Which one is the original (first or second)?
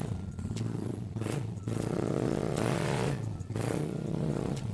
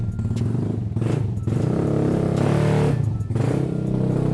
second